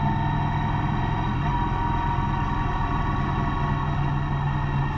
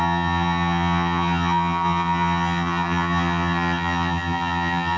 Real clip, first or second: first